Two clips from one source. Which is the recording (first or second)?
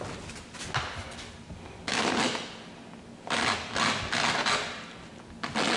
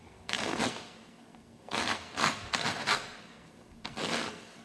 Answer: first